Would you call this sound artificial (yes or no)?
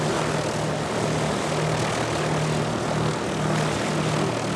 no